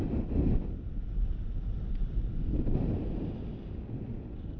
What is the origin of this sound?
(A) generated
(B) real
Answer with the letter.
B